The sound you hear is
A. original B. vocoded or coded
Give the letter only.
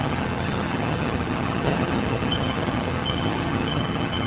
B